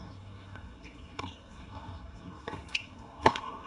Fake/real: fake